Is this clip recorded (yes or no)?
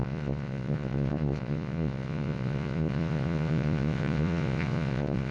no